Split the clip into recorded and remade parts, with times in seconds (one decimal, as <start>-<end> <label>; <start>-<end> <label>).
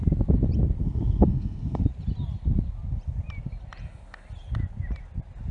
0.0-0.8 recorded; 0.8-1.8 remade; 1.8-5.5 recorded